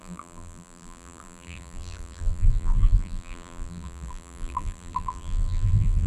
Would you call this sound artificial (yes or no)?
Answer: yes